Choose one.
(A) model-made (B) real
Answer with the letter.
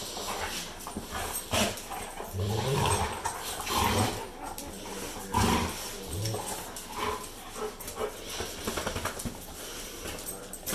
B